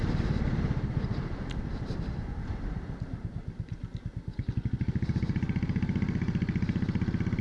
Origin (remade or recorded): recorded